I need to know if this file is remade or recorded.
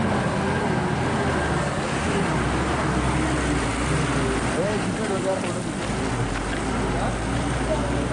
recorded